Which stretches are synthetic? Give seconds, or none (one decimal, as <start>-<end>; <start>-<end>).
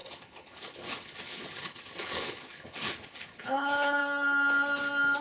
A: 0.0-4.0